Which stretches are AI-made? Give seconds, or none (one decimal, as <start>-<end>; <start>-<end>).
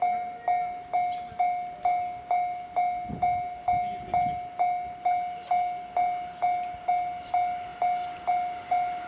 none